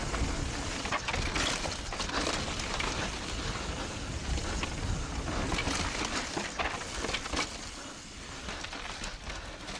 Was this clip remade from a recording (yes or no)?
no